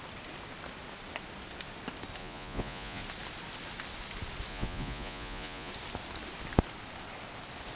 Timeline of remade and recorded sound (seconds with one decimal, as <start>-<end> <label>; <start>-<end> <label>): 0.0-2.2 recorded; 2.2-3.0 remade; 3.0-4.5 recorded; 4.5-5.7 remade; 5.7-7.8 recorded